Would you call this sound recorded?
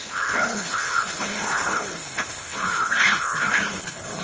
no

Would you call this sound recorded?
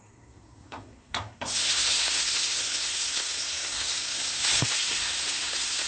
no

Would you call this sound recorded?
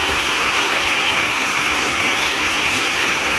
no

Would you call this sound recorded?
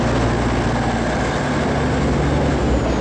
yes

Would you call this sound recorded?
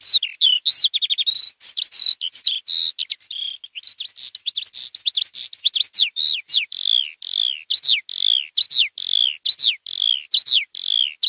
yes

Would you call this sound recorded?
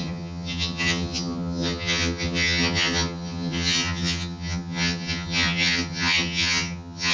no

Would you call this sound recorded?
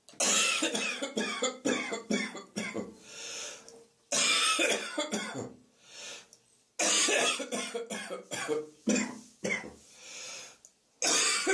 yes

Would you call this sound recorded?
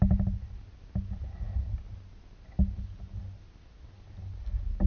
yes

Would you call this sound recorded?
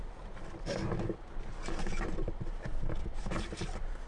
yes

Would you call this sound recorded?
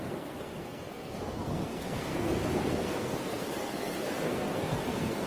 no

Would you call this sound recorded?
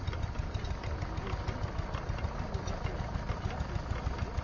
yes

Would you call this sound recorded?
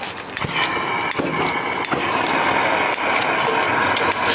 yes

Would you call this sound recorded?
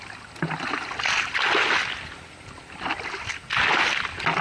yes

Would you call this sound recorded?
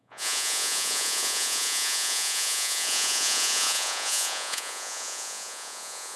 no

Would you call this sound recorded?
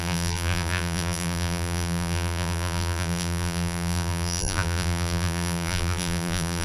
no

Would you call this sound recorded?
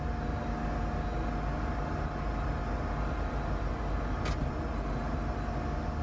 yes